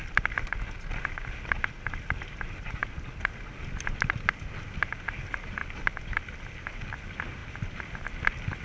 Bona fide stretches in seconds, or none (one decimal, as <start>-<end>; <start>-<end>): 0.0-2.8; 3.6-5.6; 6.2-8.6